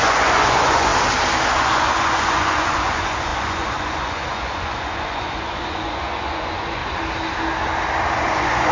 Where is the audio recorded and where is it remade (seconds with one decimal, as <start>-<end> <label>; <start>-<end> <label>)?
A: 0.0-0.9 remade; 0.9-1.5 recorded; 1.5-6.8 remade; 6.8-8.2 recorded; 8.2-8.7 remade